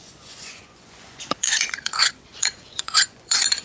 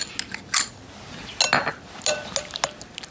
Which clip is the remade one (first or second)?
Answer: first